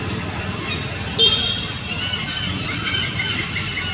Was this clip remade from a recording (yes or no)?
no